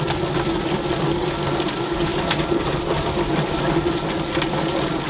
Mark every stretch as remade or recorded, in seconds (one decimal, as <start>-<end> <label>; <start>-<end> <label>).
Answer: 0.0-5.1 recorded